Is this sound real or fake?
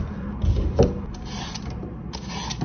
real